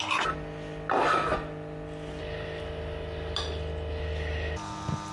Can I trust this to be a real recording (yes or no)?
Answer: yes